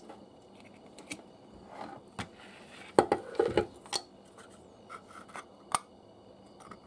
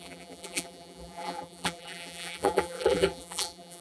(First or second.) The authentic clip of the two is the first